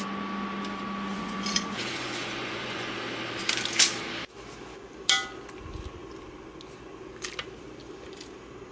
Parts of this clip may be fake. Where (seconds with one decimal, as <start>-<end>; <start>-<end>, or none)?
1.1-2.9